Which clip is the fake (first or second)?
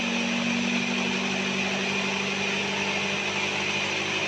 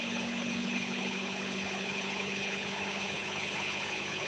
second